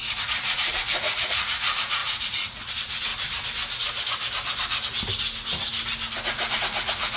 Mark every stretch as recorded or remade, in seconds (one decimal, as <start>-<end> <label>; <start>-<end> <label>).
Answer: 0.0-3.1 remade; 3.1-6.6 recorded; 6.6-7.2 remade